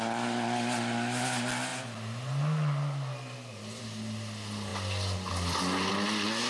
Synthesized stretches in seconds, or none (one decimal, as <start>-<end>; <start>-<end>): none